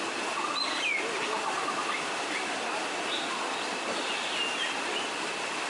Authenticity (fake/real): real